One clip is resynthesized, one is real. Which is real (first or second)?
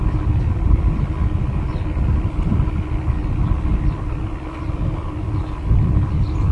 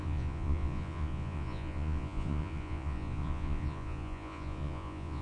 first